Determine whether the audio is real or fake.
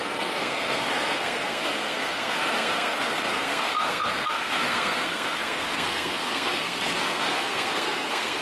fake